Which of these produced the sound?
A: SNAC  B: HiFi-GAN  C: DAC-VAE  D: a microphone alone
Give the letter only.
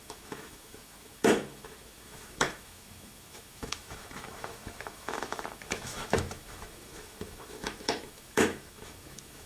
C